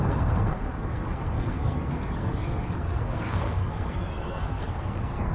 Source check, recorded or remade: remade